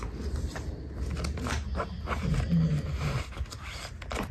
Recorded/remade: recorded